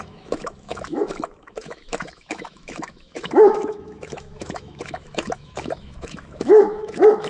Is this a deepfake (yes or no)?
yes